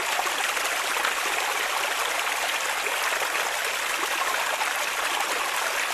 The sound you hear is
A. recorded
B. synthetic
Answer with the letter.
A